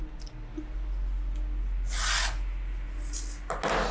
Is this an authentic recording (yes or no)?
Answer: yes